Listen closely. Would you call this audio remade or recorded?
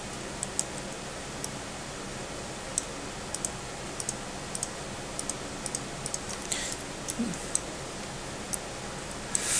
recorded